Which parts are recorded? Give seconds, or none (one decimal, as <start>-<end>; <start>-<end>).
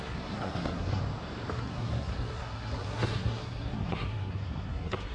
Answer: 1.0-1.5